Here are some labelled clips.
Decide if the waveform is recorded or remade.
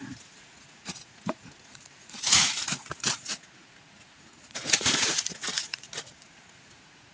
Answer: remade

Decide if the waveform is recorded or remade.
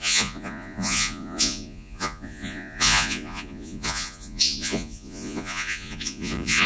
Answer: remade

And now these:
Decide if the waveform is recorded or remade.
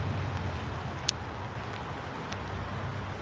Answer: recorded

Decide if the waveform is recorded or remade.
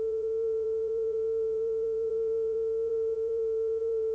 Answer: remade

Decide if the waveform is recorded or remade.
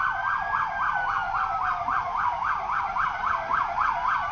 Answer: recorded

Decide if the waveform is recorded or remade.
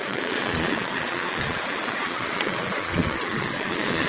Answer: remade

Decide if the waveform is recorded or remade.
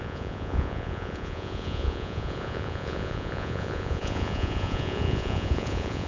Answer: remade